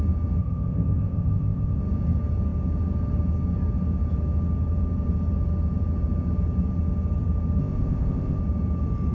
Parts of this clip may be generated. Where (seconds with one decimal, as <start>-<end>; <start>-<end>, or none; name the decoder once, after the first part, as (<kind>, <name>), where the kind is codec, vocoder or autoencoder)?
0.4-1.8 (codec, ZipCodec); 7.6-8.4